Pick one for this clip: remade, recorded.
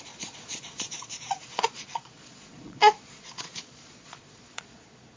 remade